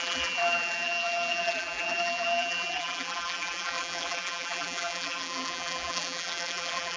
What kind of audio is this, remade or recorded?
remade